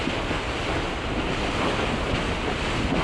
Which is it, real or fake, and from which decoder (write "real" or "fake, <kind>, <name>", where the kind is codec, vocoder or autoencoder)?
real